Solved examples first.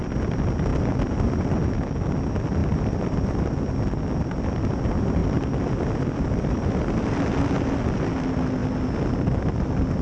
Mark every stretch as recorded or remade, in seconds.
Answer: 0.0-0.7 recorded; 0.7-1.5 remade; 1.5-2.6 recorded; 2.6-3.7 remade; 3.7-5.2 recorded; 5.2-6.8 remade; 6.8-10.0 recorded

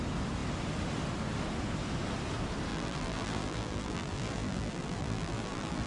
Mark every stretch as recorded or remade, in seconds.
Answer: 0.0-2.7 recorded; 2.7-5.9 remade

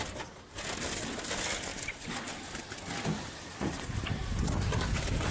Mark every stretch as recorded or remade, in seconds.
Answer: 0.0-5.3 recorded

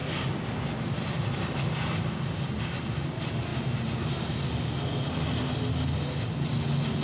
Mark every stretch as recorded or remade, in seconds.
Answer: 0.0-3.5 recorded; 3.5-4.1 remade; 4.1-7.0 recorded